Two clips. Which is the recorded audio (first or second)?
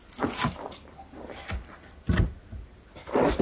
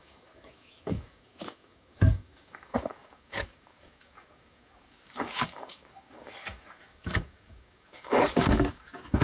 first